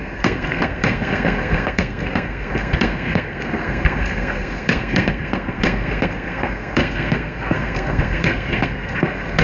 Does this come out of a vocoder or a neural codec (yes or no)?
yes